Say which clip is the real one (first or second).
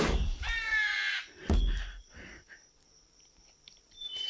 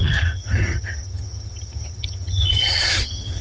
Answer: first